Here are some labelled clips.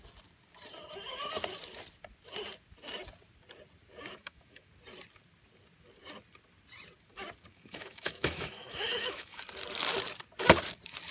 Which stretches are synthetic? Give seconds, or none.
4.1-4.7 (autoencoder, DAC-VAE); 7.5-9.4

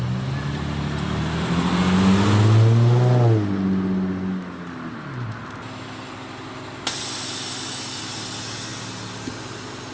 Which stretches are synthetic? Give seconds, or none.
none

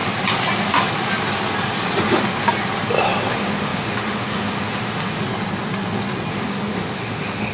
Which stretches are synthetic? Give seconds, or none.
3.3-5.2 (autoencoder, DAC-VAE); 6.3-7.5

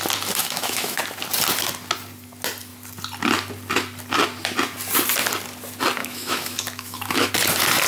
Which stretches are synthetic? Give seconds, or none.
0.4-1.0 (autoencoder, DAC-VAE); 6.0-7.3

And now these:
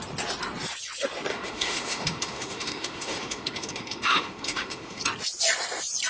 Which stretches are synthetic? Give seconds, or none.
1.3-5.0 (autoencoder, DAC-VAE)